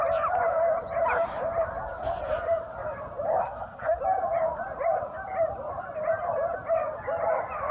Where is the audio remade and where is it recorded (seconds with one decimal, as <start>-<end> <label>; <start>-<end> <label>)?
0.0-3.3 recorded; 3.3-4.0 remade; 4.0-7.7 recorded